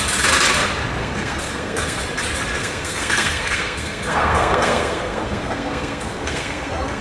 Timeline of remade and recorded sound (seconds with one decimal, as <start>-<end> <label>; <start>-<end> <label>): 0.0-1.0 recorded; 1.0-2.0 remade; 2.0-2.6 recorded; 2.6-7.0 remade